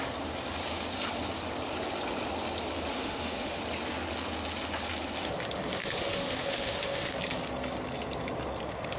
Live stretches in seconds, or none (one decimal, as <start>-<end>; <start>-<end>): 0.0-2.9; 3.6-5.8; 7.1-9.0